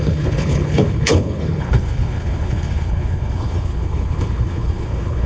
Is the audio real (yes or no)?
no